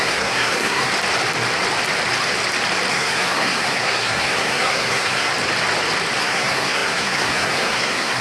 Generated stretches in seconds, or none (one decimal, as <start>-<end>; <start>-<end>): 0.0-0.9; 2.9-5.3; 6.2-8.2